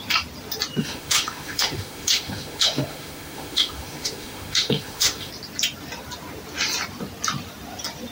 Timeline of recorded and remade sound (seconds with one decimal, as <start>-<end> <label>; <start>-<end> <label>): 0.0-0.8 recorded; 0.8-5.3 remade; 5.3-8.1 recorded